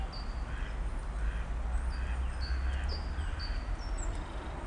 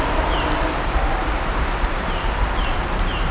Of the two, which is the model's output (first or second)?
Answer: second